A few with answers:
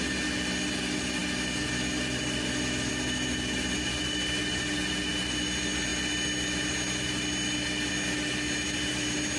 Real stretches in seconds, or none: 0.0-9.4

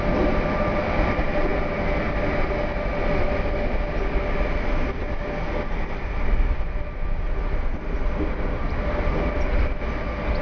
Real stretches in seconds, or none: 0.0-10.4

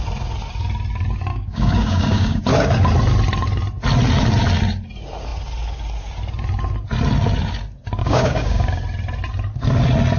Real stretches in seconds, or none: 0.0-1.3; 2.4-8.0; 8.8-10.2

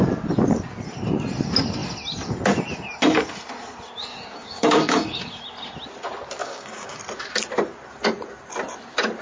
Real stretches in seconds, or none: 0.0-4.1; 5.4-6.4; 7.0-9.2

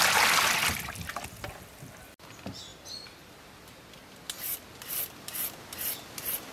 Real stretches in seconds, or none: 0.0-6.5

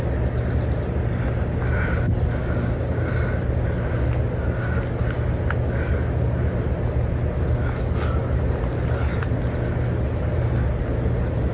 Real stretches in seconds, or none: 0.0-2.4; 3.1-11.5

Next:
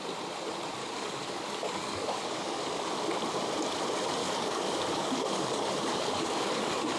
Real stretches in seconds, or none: 0.0-0.8; 2.8-4.2